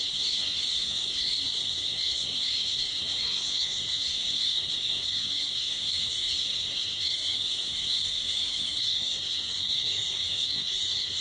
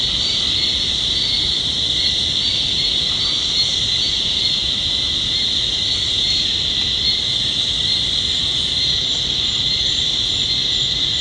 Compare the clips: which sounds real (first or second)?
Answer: second